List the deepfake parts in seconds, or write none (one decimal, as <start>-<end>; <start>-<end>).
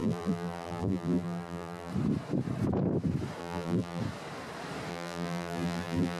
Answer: 0.0-1.9; 3.4-4.0; 4.9-6.2